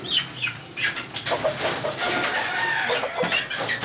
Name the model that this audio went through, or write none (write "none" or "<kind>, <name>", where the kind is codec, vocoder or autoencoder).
none